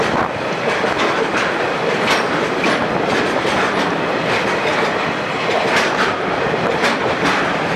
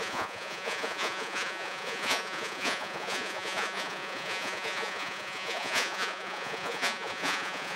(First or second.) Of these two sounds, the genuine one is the first